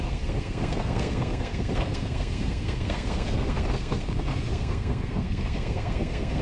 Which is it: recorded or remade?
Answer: remade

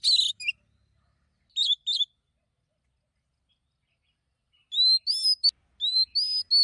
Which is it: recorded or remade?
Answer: recorded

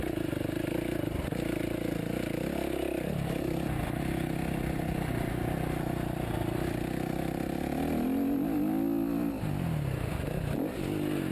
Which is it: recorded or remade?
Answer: recorded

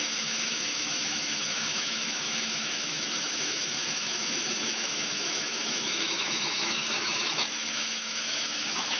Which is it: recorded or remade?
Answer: remade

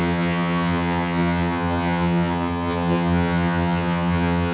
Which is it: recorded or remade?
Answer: remade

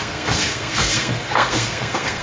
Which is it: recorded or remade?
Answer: remade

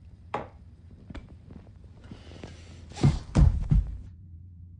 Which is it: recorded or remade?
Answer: remade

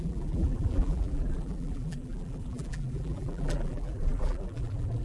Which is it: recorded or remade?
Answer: remade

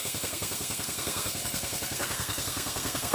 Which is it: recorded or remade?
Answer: remade